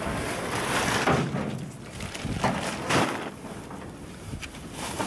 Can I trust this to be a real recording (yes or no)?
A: yes